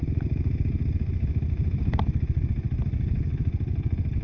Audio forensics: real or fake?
real